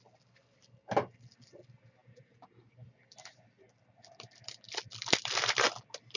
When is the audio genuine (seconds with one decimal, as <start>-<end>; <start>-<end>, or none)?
0.0-2.0; 5.7-6.2